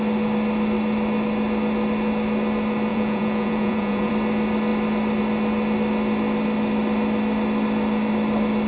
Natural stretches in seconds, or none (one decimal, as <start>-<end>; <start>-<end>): 0.0-2.9; 4.1-8.7

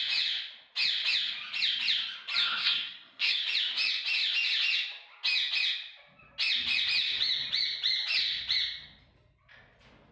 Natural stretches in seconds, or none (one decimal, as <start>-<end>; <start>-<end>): 0.0-2.4; 3.4-10.1

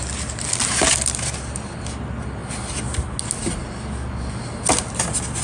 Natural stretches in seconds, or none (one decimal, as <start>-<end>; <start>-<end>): 0.0-5.4